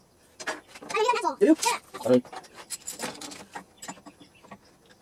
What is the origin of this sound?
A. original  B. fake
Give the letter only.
A